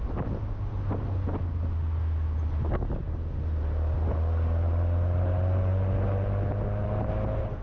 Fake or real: real